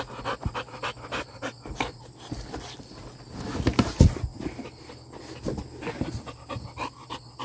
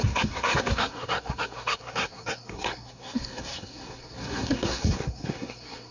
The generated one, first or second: second